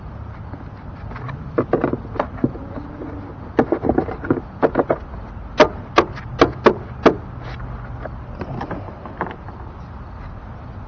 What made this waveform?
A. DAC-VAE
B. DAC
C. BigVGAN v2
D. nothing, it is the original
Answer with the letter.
D